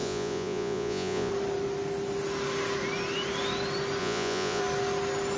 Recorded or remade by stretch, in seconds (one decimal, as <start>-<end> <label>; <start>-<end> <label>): 0.0-1.3 remade; 1.3-4.0 recorded; 4.0-4.6 remade; 4.6-5.4 recorded